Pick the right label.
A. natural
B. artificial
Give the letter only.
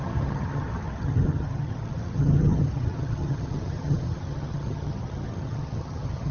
B